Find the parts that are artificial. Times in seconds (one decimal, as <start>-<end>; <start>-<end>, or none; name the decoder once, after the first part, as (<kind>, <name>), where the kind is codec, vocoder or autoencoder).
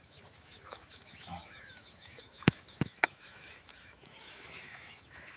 0.0-5.4 (autoencoder, DAC-VAE)